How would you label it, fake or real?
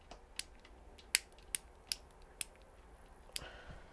real